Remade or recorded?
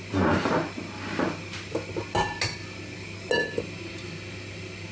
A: recorded